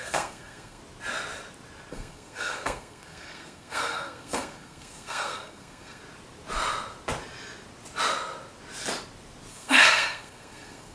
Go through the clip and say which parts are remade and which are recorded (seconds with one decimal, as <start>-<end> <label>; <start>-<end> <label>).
0.0-0.8 remade; 0.8-1.9 recorded; 1.9-6.0 remade; 6.0-9.5 recorded; 9.5-10.9 remade